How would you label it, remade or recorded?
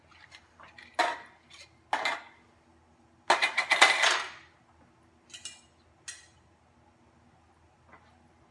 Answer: recorded